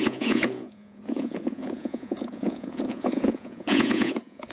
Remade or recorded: remade